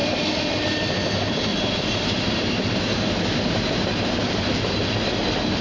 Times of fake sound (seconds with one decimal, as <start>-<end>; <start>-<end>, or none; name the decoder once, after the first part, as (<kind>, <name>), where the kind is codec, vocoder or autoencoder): 0.0-0.9 (vocoder, BigVGAN v2); 1.5-4.5